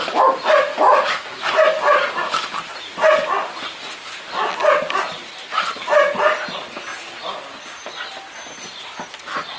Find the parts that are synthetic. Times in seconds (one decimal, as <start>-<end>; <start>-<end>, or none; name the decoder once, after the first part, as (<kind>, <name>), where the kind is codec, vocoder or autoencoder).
0.7-1.4 (autoencoder, DAC-VAE)